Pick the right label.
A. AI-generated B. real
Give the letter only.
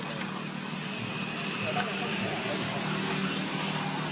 B